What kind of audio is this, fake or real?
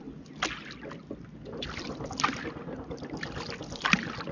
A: real